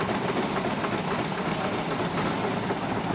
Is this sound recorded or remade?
recorded